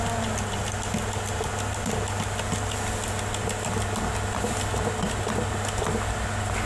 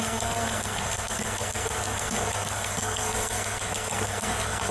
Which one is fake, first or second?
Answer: second